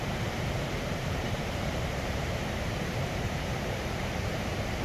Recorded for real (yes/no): no